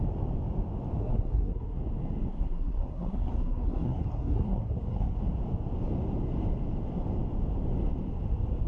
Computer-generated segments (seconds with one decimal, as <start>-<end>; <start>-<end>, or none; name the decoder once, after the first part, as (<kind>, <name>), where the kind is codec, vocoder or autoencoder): 1.0-1.8 (codec, SNAC); 2.3-5.2